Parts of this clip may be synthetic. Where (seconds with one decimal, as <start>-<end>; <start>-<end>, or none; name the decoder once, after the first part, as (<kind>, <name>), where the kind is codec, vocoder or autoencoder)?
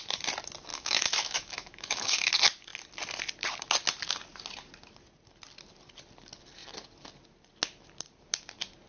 0.7-2.3 (autoencoder, DAC-VAE)